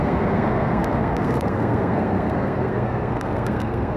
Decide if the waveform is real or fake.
fake